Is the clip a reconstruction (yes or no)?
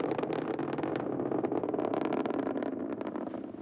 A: no